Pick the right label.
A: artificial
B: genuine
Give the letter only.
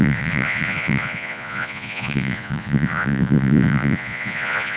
A